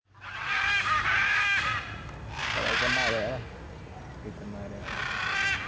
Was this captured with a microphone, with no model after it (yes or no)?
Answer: yes